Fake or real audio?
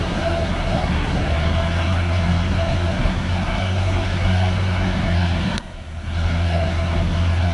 fake